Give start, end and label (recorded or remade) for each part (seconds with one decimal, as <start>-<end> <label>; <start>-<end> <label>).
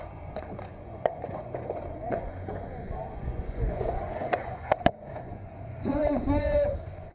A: 0.0-7.1 remade